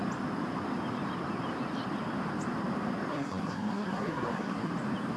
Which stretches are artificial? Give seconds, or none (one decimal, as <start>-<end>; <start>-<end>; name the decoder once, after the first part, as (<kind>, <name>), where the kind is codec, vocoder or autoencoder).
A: 3.1-4.7 (codec, SNAC)

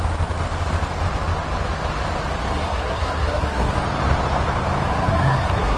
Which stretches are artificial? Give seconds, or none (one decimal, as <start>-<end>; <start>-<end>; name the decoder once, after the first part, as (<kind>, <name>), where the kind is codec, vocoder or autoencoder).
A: 2.5-3.7 (codec, SNAC); 4.9-5.8